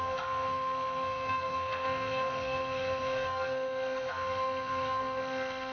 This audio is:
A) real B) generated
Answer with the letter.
B